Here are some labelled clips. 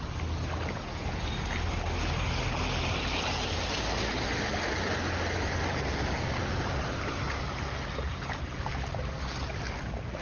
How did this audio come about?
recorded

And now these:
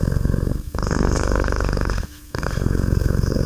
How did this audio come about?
remade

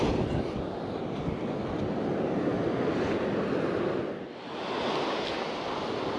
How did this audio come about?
recorded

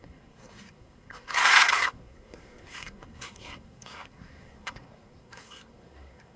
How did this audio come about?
remade